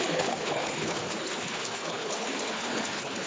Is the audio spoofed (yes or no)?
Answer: yes